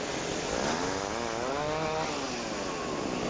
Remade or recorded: recorded